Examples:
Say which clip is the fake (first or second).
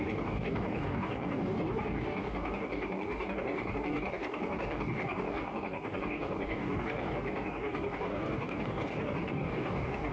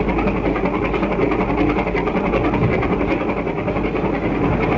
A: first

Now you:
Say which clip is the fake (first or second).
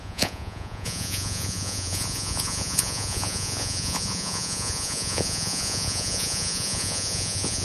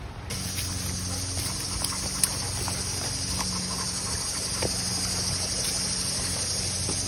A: first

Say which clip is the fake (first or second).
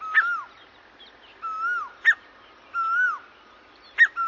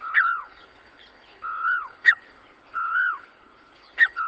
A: second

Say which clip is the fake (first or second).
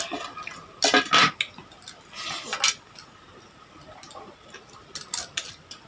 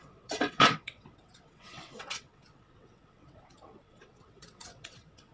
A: second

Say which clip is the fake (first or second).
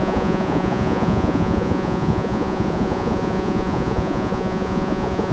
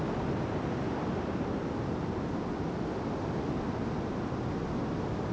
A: first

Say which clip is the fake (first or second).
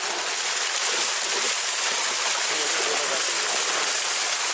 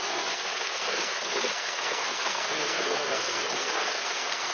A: second